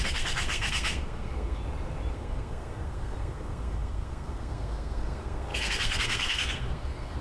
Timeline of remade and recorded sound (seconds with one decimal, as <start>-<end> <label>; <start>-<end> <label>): 0.0-1.6 remade; 1.6-2.1 recorded; 2.1-7.2 remade